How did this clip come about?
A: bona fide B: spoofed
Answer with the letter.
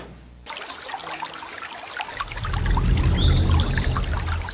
A